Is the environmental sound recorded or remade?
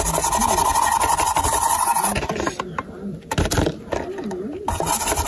recorded